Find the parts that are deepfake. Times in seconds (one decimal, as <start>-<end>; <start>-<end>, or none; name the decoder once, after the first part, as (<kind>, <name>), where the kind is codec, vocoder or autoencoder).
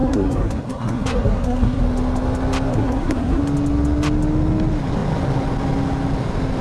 0.0-1.8 (codec, SNAC); 2.7-3.4